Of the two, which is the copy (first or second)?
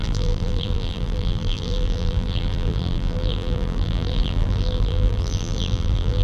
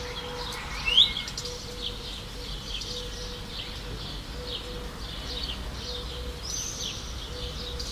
first